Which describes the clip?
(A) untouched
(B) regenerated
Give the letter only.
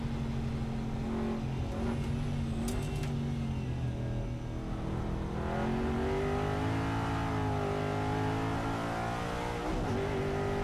A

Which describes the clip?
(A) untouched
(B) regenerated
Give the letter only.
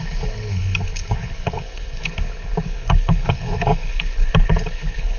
B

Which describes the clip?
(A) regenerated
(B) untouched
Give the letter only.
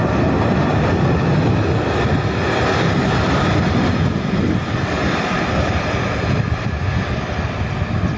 B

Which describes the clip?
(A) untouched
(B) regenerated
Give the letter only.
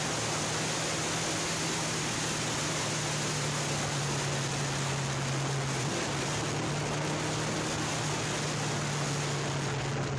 A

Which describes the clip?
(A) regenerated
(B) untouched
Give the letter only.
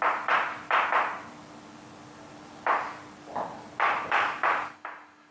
B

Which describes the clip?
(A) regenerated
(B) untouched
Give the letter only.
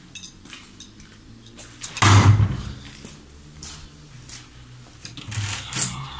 B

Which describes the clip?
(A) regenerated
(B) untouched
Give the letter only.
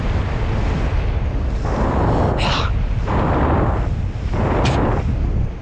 B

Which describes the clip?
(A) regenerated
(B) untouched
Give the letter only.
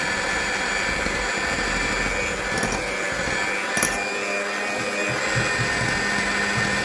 B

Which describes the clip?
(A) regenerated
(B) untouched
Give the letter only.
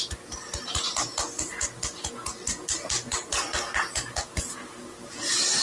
B